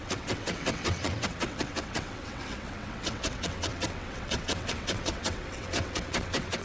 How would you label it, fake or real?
fake